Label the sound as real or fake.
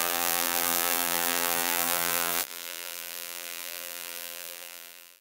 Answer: fake